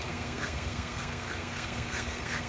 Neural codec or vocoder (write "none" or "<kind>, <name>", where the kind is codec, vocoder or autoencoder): codec, SNAC